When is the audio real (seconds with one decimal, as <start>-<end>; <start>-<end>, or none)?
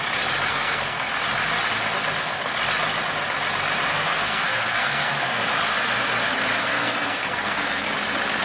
0.0-0.5; 1.1-3.9; 5.4-6.6; 7.9-8.4